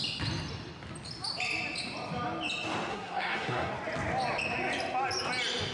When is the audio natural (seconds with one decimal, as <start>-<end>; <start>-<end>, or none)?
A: 0.0-2.9; 3.7-5.7